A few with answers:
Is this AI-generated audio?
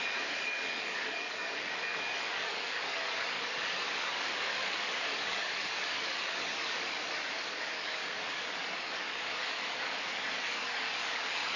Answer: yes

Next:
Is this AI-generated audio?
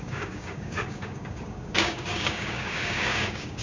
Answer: yes